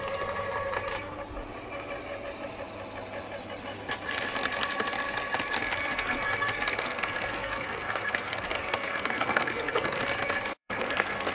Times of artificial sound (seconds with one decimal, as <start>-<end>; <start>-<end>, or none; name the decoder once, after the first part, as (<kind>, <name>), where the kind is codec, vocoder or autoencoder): 5.6-10.0 (codec, SNAC); 10.5-11.3